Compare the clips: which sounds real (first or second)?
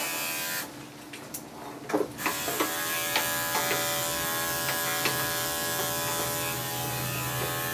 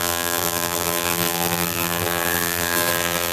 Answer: first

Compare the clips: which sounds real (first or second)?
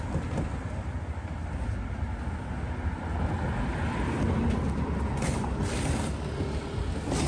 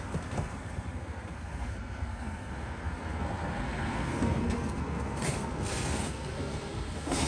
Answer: first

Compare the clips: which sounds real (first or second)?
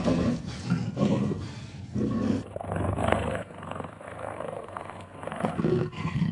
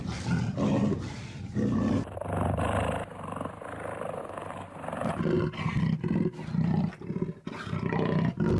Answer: second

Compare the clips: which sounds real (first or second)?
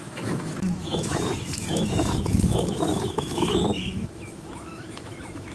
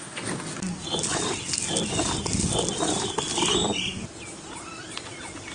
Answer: second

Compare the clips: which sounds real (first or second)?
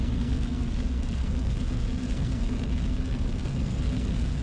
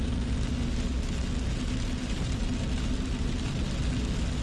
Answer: second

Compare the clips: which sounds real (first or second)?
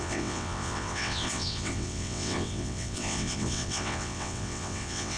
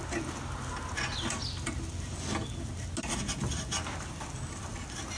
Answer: second